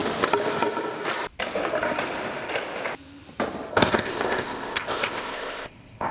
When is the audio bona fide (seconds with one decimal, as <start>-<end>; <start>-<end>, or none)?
0.0-3.7